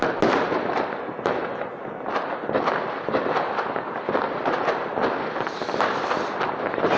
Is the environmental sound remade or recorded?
recorded